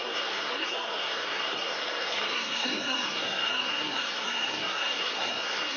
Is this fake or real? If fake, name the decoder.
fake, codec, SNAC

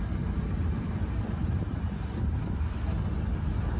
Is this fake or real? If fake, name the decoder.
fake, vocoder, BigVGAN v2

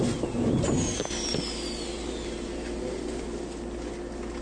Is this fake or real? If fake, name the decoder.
real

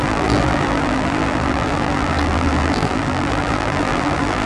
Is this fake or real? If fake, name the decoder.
fake, vocoder, BigVGAN v2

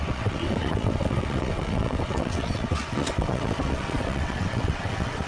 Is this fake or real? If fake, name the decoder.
fake, vocoder, WaveNeXt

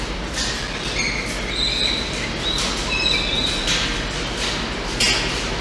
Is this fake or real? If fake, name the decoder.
real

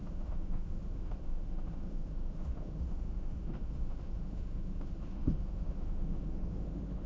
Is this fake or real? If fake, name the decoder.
fake, autoencoder, DAC-VAE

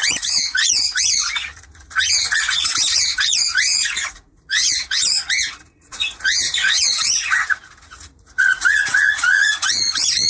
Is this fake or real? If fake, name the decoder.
fake, vocoder, Vocos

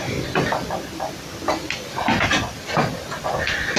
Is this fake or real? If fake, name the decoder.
real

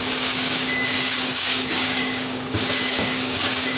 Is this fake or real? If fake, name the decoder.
fake, codec, DAC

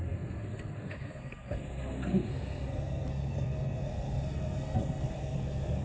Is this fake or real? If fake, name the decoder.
fake, codec, SNAC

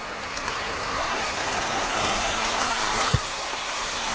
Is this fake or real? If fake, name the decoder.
fake, codec, SNAC